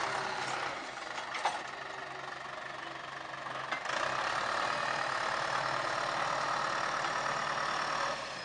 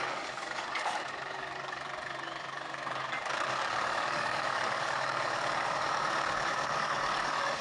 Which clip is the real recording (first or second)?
first